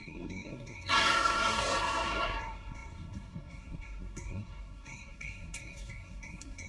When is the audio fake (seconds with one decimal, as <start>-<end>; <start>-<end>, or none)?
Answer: 0.0-6.7